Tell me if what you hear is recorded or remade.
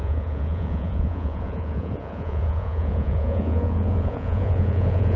remade